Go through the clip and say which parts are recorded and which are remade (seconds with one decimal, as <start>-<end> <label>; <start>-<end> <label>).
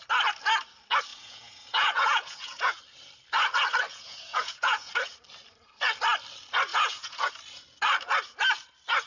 0.0-1.1 recorded; 1.1-2.8 remade; 2.8-3.9 recorded; 3.9-4.9 remade; 4.9-6.7 recorded; 6.7-7.3 remade; 7.3-9.1 recorded